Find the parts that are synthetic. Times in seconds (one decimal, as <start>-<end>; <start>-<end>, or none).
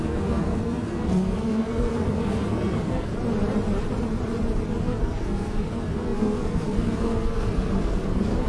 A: 0.0-3.1; 4.8-8.5